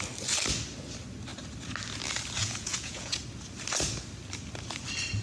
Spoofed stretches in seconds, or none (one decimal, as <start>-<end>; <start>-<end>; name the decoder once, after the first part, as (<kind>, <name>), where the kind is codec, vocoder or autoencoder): 2.4-3.2 (vocoder, Vocos)